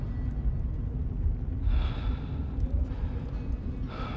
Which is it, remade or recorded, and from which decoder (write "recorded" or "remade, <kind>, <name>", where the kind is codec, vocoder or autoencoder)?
recorded